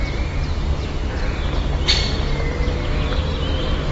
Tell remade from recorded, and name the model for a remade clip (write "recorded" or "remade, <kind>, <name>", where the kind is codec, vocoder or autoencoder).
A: recorded